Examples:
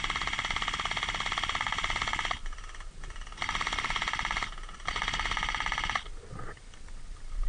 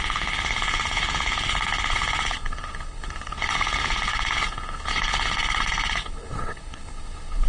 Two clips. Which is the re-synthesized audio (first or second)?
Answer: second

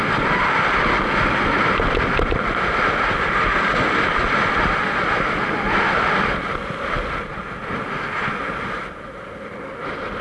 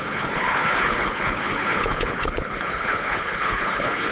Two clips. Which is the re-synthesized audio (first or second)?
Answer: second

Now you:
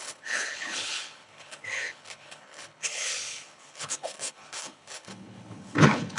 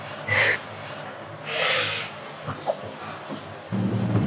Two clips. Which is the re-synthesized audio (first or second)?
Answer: first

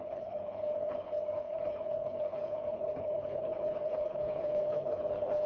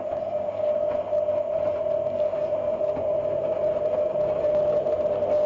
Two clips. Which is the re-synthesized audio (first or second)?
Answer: first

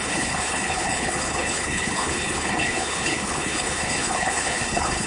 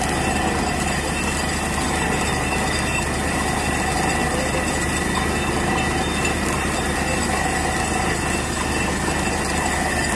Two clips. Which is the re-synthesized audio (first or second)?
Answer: first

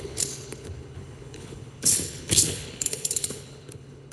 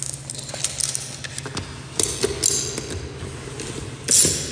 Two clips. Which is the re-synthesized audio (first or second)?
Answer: first